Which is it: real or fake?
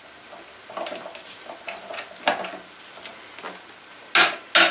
real